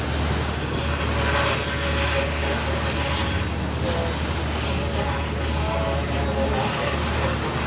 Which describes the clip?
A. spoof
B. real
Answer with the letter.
B